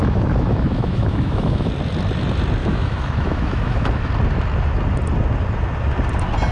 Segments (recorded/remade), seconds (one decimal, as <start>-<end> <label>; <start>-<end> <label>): 0.0-1.7 remade; 1.7-2.6 recorded; 2.6-4.1 remade; 4.1-6.5 recorded